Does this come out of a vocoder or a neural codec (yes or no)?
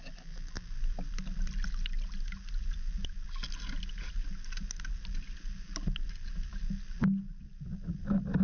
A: no